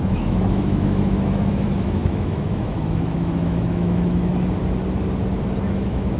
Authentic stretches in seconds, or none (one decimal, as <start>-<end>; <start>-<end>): 4.3-5.7